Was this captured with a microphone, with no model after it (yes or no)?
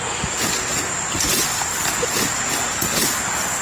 yes